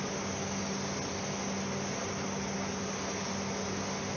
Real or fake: real